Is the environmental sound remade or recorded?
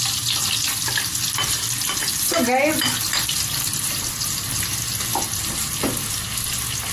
recorded